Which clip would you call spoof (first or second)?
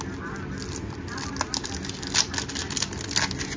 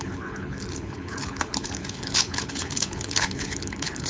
second